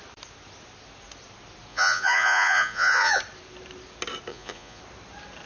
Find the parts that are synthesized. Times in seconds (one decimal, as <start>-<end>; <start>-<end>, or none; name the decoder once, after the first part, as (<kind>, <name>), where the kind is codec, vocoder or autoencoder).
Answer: 1.7-3.2 (vocoder, Vocos); 4.3-4.8